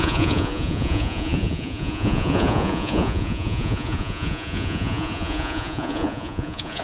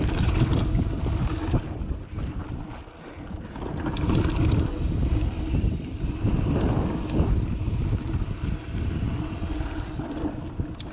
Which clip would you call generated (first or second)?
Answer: first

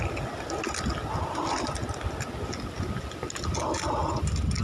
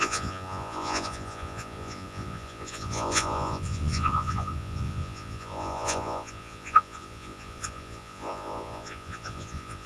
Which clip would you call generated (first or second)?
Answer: second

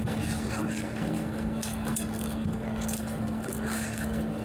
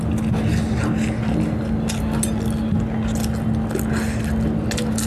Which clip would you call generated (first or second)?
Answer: first